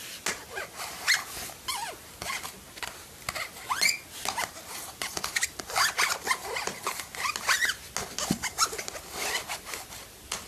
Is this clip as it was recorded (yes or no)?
yes